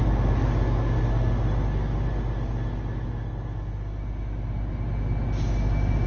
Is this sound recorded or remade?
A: recorded